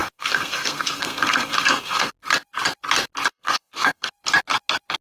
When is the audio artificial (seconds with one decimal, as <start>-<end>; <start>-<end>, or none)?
0.0-2.1; 3.3-4.1

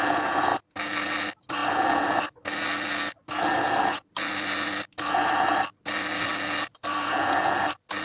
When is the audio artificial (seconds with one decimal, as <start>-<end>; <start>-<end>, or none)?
none

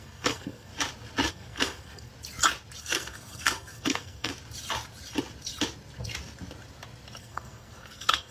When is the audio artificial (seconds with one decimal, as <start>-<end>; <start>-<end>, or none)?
0.0-0.7; 1.3-2.1; 2.8-4.3; 7.2-8.3

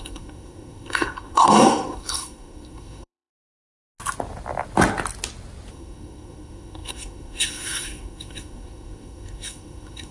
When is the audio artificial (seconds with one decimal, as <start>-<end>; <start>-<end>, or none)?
0.0-3.3; 5.7-10.1

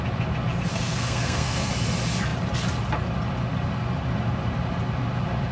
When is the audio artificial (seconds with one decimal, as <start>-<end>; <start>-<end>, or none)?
0.7-1.7

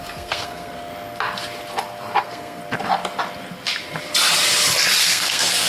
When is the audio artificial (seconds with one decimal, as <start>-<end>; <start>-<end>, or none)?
0.0-0.9; 2.2-2.6; 5.0-5.7

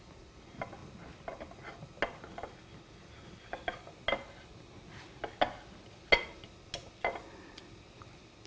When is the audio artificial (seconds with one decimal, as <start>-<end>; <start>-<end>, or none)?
none